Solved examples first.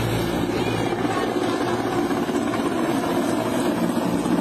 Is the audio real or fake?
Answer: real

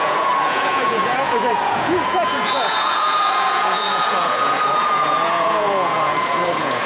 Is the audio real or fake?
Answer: fake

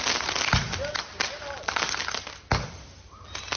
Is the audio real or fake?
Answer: real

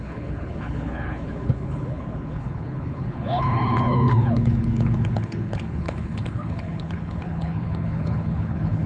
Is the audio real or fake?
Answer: fake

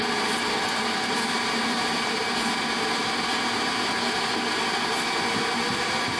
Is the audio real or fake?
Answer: real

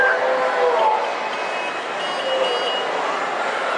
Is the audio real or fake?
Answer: real